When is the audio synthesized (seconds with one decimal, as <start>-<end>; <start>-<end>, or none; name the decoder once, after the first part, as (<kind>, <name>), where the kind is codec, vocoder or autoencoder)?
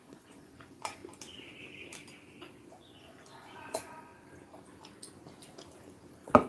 0.0-1.0 (vocoder, Vocos); 2.8-4.1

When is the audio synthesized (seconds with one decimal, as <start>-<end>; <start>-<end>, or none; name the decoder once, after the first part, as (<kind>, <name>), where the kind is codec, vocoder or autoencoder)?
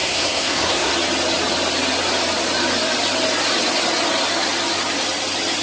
0.0-0.9 (codec, SNAC)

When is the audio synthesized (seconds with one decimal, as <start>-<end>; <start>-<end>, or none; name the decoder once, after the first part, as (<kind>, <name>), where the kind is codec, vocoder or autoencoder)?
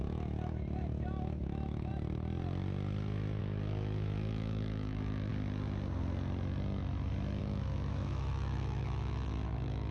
0.0-1.9 (autoencoder, DAC-VAE); 3.4-5.3; 7.4-9.9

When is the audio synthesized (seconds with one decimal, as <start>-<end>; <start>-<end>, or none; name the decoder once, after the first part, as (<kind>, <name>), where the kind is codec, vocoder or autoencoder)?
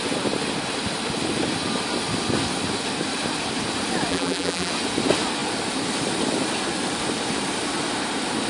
4.1-4.7 (vocoder, BigVGAN v2)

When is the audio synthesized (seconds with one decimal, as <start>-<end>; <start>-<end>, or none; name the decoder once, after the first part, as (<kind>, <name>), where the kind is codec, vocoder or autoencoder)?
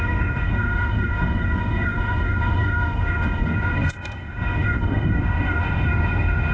0.0-6.5 (autoencoder, DAC-VAE)